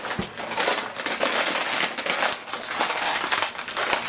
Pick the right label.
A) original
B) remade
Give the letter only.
A